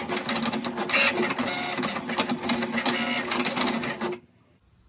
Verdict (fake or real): real